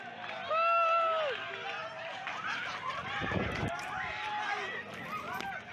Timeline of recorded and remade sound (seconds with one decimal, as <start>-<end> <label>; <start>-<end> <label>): 0.0-1.8 recorded; 1.8-4.3 remade; 4.3-5.7 recorded